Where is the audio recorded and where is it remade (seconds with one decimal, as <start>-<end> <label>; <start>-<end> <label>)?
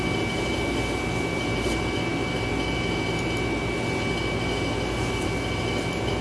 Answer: 0.0-6.2 recorded